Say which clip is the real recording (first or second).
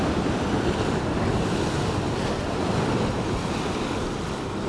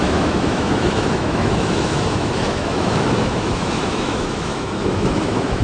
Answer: first